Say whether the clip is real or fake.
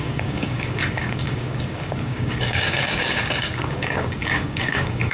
fake